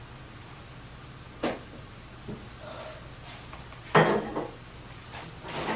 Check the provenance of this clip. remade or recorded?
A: recorded